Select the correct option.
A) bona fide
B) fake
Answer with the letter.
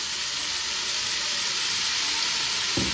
A